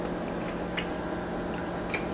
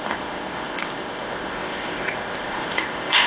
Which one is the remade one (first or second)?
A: second